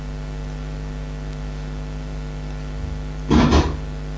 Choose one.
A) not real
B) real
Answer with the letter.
B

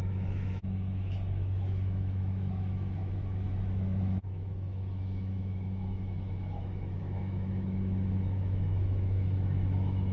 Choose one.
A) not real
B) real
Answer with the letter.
A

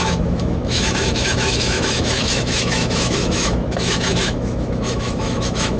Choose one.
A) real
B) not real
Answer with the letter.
B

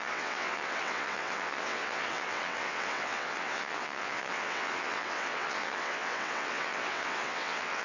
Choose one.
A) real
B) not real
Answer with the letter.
B